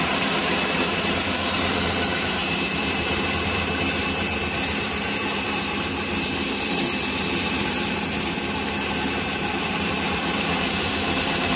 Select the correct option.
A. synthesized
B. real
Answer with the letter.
A